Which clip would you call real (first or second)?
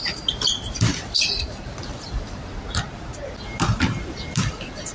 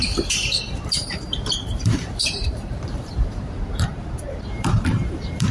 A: first